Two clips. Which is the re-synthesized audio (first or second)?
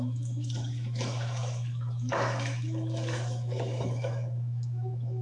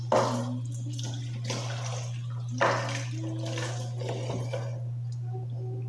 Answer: first